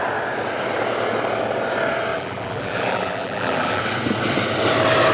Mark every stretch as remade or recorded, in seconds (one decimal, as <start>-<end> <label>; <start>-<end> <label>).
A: 0.0-2.1 recorded; 2.1-3.8 remade; 3.8-5.1 recorded